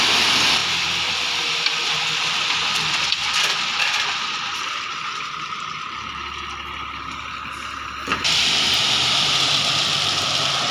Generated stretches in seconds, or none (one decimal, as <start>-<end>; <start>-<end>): 0.6-5.4; 8.1-8.8